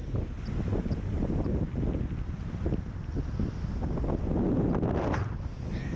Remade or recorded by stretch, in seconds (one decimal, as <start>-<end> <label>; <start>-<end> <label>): 0.0-6.0 recorded

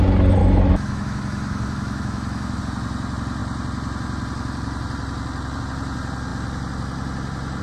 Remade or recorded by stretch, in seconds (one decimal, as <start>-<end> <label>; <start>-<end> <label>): 0.0-0.4 recorded; 0.4-2.6 remade; 2.6-7.6 recorded

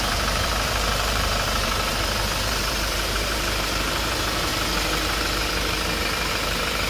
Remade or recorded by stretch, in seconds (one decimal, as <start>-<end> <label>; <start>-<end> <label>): 0.0-4.5 remade; 4.5-6.3 recorded; 6.3-6.9 remade